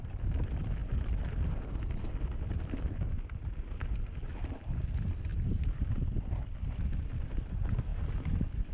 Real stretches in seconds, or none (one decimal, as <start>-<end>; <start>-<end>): 0.0-5.3; 6.6-8.7